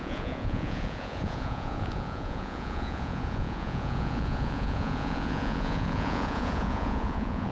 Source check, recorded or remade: remade